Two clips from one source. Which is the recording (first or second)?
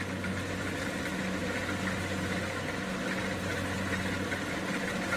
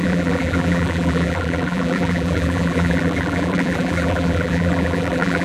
first